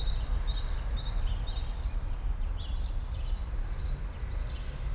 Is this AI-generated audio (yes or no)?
no